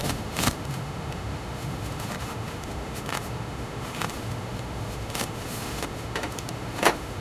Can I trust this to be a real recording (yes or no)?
no